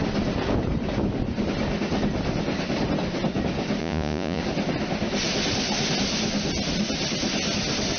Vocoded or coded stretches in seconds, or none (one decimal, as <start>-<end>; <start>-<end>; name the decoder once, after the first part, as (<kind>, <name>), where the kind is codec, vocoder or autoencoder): 3.8-4.4 (vocoder, Vocos)